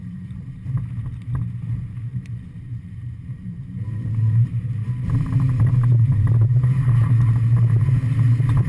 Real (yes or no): no